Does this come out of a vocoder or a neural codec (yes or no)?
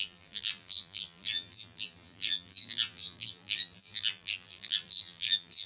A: yes